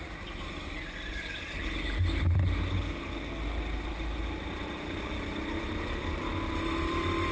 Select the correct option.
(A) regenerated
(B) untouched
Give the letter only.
B